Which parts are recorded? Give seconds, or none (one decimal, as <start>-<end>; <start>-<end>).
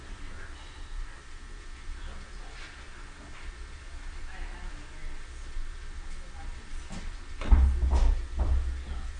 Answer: 0.0-9.2